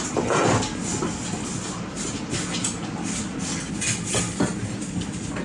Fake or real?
real